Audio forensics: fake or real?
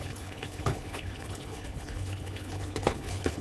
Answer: fake